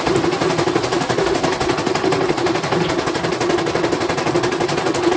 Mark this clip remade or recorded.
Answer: recorded